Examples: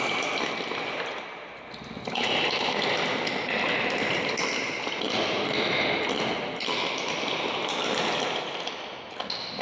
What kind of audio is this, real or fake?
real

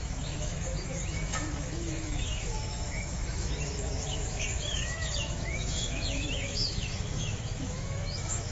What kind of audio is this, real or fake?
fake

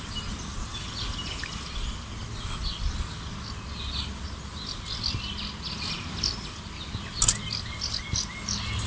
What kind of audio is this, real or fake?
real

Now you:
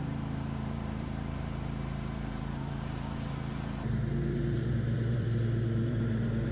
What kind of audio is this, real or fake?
fake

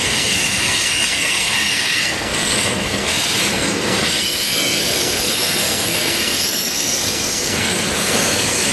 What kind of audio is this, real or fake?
fake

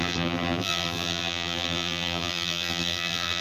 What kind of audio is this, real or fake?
fake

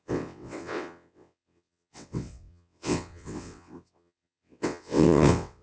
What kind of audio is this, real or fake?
fake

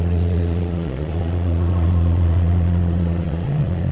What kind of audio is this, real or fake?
fake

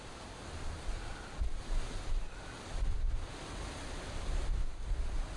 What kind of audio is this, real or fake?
real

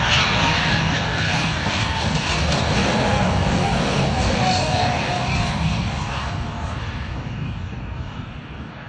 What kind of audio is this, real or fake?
fake